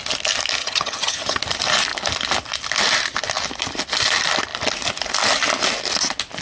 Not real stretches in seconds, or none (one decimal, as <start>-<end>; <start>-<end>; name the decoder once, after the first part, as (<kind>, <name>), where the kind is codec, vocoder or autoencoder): 0.6-1.4 (vocoder, HiFi-GAN)